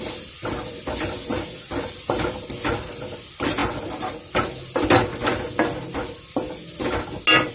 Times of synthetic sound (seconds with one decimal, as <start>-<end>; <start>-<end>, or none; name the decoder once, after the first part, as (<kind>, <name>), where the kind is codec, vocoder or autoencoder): none